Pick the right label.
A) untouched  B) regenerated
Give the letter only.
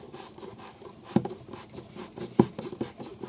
B